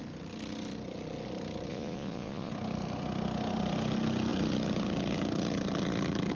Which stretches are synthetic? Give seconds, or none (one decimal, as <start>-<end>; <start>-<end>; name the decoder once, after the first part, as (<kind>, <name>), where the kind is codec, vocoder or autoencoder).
1.7-2.5 (vocoder, Vocos)